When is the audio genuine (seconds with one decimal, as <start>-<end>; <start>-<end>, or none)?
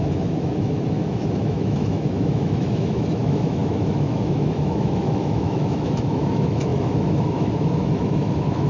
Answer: none